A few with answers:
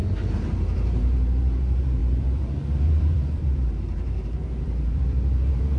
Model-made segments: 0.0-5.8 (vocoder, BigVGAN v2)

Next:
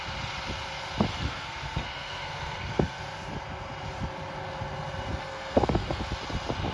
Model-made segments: 1.1-3.0 (codec, SNAC); 5.2-6.0

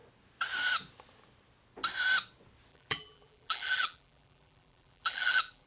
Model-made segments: 2.7-5.7 (vocoder, BigVGAN v2)

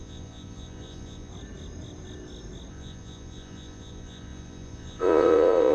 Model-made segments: 0.0-1.3 (vocoder, Vocos); 2.7-5.7

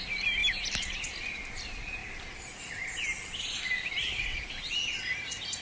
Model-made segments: 2.0-5.6 (vocoder, BigVGAN v2)

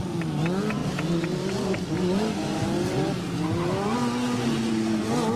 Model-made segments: 0.8-1.9 (vocoder, BigVGAN v2)